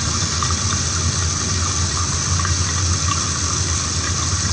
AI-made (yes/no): no